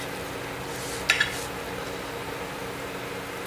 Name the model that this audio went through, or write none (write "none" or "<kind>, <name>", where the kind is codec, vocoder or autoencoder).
none